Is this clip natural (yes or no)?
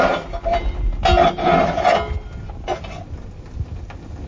yes